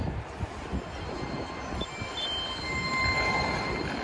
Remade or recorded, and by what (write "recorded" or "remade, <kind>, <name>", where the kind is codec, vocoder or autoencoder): recorded